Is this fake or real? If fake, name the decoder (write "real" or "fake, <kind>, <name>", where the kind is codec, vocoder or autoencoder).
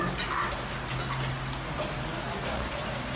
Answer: real